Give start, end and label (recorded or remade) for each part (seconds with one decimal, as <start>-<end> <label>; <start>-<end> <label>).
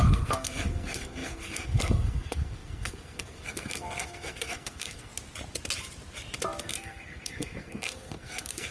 0.0-5.1 remade; 5.1-6.6 recorded; 6.6-8.7 remade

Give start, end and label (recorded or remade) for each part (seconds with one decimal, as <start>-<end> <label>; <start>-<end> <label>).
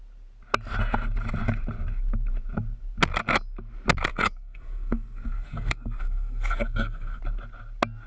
0.0-4.1 recorded; 4.1-7.2 remade; 7.2-8.1 recorded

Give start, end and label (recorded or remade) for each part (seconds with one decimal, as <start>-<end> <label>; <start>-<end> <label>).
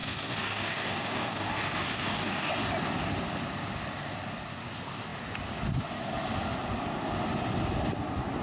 0.0-2.5 remade; 2.5-8.4 recorded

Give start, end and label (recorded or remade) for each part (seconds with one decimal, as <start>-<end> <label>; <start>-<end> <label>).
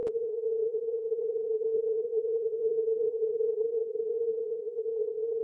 0.0-3.2 remade; 3.2-5.4 recorded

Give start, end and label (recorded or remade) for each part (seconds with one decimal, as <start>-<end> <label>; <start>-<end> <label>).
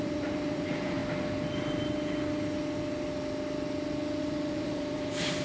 0.0-1.0 remade; 1.0-4.2 recorded; 4.2-5.4 remade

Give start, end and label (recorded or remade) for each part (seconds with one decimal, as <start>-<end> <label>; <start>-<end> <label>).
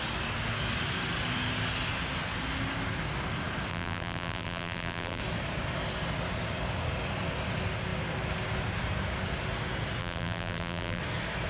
0.0-3.7 recorded; 3.7-5.2 remade; 5.2-10.0 recorded; 10.0-11.0 remade; 11.0-11.5 recorded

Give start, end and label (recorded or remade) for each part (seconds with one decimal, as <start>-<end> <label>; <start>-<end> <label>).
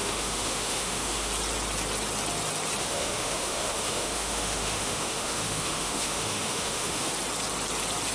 0.0-1.3 remade; 1.3-2.8 recorded; 2.8-7.1 remade; 7.1-8.1 recorded